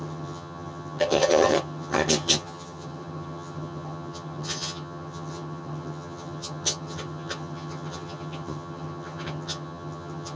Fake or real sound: fake